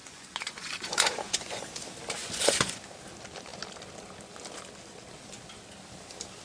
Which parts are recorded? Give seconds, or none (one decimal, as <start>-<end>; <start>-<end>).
1.6-2.2; 2.8-6.4

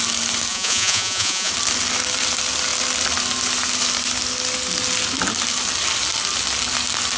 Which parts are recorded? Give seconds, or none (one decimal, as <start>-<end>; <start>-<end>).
0.0-0.5; 1.5-7.2